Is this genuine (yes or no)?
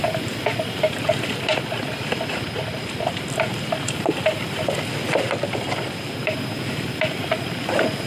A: yes